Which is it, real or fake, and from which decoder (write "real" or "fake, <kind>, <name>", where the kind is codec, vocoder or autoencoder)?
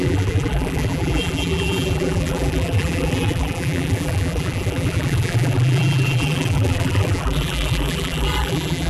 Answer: fake, vocoder, BigVGAN v2